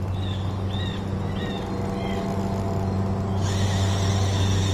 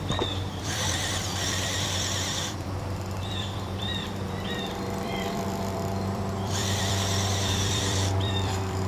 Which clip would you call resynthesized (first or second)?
second